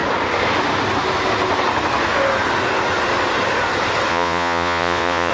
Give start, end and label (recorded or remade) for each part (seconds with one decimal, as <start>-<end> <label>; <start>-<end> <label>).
0.0-4.1 recorded; 4.1-5.3 remade